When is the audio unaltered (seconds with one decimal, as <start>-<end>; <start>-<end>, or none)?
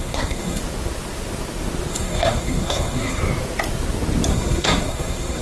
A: 0.6-1.9; 3.2-4.3